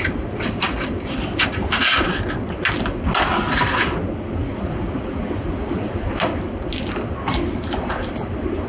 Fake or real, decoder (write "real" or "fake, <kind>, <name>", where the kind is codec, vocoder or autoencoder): real